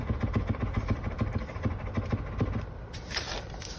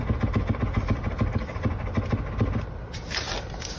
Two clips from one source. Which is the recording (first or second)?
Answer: second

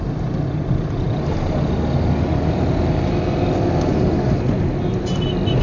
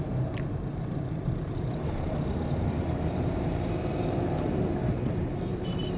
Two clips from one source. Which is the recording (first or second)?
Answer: first